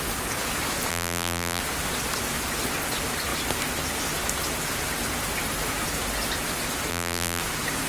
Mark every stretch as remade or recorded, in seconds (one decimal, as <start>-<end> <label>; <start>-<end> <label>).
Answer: 0.0-0.9 recorded; 0.9-1.6 remade; 1.6-6.9 recorded; 6.9-7.4 remade; 7.4-7.9 recorded